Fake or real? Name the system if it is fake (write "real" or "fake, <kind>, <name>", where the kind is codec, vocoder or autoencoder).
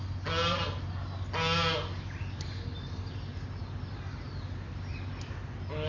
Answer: real